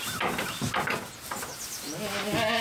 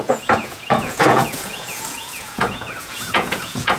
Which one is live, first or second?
first